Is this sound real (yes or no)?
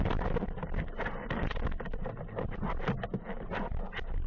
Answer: yes